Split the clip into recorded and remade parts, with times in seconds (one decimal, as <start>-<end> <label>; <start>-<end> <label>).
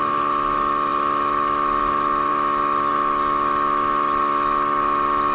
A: 0.0-5.3 remade